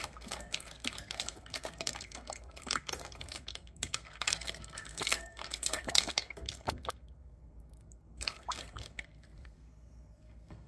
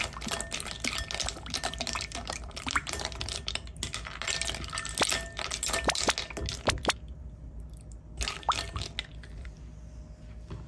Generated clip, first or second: first